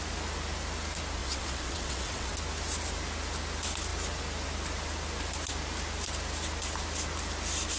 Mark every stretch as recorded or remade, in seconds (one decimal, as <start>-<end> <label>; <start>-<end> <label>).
0.0-1.2 recorded; 1.2-2.3 remade; 2.3-7.8 recorded